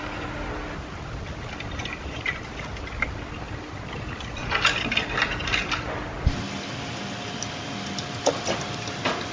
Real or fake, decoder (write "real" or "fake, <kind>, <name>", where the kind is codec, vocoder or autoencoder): real